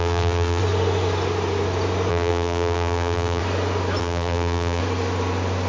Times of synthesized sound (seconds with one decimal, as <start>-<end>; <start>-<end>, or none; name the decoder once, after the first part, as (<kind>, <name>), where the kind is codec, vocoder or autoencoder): 0.0-0.6 (vocoder, BigVGAN v2); 2.1-3.4; 4.0-4.8